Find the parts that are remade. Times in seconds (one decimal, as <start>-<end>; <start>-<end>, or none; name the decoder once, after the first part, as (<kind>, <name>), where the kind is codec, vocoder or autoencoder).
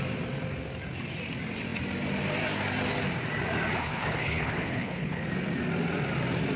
3.7-5.2 (codec, HILCodec)